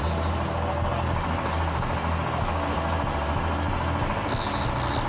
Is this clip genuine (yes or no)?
yes